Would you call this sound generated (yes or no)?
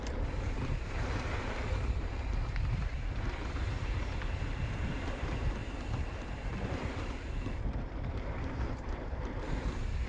yes